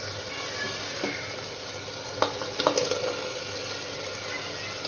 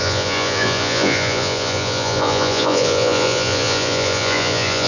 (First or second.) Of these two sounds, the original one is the first